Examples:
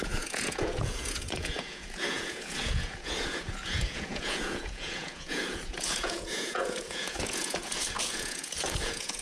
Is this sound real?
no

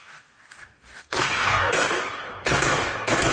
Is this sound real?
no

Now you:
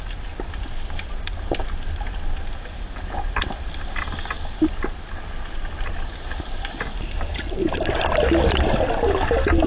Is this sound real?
yes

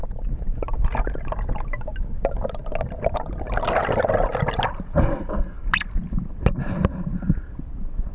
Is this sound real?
yes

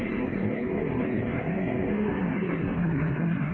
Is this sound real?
no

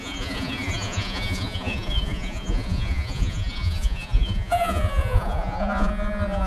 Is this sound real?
no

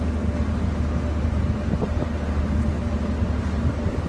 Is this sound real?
yes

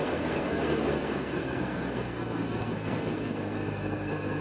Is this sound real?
no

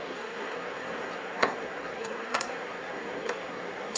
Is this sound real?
no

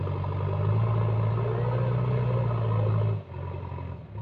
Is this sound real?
yes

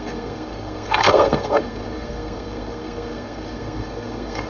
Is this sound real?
no